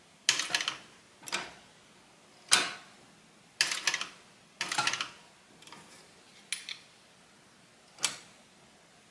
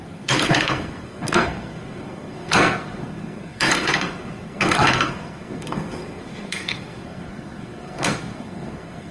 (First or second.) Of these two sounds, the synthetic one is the second